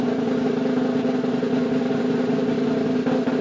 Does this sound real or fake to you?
real